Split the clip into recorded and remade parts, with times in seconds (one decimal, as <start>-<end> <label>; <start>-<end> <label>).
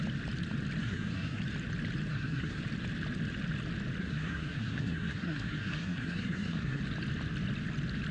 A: 0.0-0.8 recorded; 0.8-1.4 remade; 1.4-2.1 recorded; 2.1-2.6 remade; 2.6-4.0 recorded; 4.0-6.8 remade; 6.8-8.1 recorded